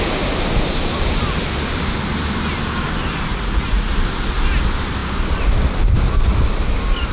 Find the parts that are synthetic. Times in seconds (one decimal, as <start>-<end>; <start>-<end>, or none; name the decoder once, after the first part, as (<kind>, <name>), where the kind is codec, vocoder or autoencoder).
3.3-3.9 (vocoder, Vocos)